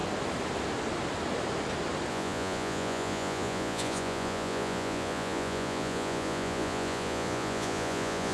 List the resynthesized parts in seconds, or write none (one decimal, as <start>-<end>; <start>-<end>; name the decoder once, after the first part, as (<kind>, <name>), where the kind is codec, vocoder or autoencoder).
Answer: 2.1-8.3 (vocoder, Vocos)